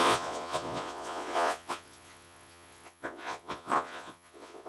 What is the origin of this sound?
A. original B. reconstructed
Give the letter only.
B